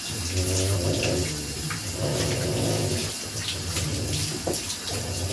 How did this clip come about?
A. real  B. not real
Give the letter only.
A